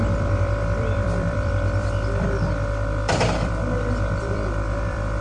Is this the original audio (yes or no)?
no